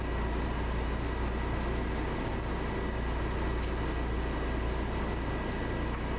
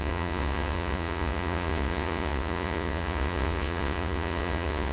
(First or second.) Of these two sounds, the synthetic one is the second